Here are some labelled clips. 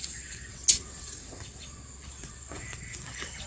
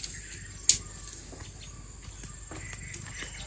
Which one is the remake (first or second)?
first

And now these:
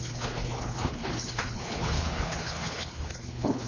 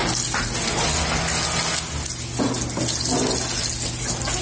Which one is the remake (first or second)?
first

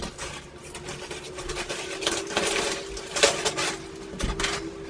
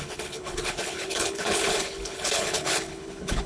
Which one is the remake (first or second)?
second